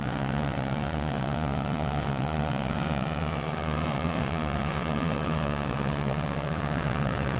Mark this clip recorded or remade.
remade